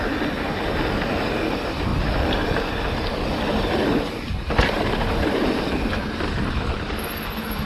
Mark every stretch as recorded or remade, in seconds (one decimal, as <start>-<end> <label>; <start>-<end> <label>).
0.0-3.8 recorded; 3.8-5.4 remade; 5.4-7.7 recorded